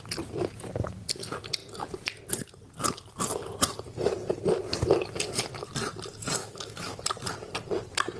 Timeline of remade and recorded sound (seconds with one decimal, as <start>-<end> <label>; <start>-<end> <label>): 0.0-6.4 recorded; 6.4-7.0 remade; 7.0-8.2 recorded